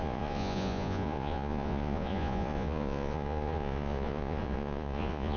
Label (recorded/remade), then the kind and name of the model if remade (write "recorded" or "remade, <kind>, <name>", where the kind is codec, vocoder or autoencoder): remade, vocoder, Vocos